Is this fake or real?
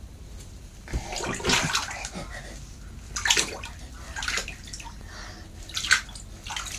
real